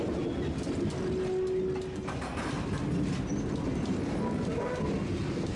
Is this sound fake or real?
real